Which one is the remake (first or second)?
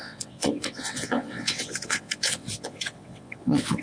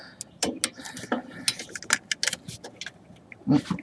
first